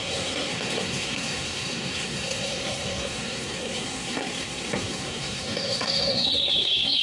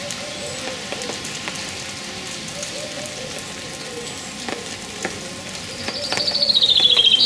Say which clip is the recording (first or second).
second